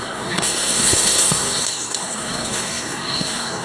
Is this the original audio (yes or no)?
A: no